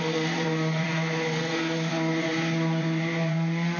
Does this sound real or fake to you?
fake